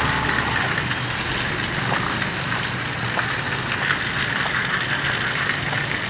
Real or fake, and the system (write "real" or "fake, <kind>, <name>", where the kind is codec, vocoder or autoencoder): real